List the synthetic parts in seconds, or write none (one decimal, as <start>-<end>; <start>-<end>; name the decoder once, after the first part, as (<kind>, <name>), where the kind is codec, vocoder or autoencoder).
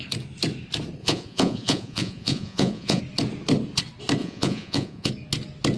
1.0-3.0 (vocoder, Vocos); 4.2-5.1